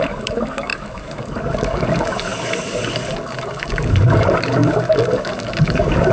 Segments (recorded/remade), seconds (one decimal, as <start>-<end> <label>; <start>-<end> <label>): 0.0-6.1 remade